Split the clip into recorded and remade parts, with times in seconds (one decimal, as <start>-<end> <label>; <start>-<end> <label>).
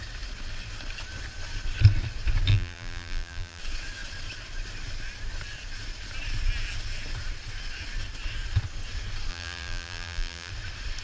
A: 0.0-2.5 recorded; 2.5-3.6 remade; 3.6-9.3 recorded; 9.3-10.5 remade; 10.5-11.0 recorded